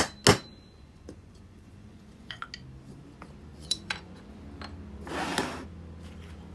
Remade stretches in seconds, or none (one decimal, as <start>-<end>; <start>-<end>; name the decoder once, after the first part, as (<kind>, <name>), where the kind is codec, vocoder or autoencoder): 0.5-2.4 (vocoder, Vocos); 3.5-4.4